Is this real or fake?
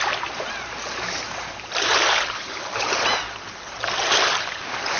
real